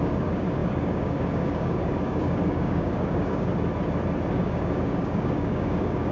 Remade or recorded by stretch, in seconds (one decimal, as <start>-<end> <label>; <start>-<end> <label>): 0.0-3.5 remade; 3.5-4.3 recorded; 4.3-6.1 remade